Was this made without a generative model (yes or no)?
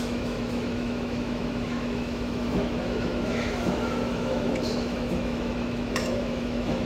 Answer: no